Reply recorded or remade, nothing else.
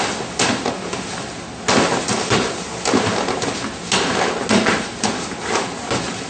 recorded